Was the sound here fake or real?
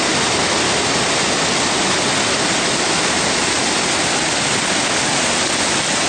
real